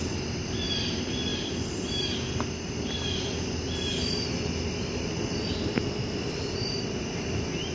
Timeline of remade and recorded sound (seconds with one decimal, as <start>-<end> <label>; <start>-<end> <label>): 0.0-7.7 recorded